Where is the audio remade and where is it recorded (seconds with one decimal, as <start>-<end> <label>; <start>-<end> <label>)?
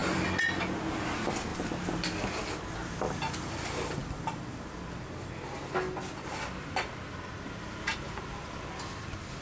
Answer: 0.0-9.4 recorded